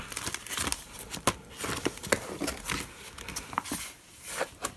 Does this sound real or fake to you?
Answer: real